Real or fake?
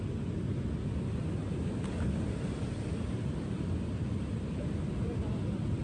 real